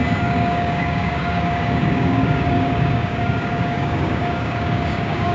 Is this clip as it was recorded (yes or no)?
no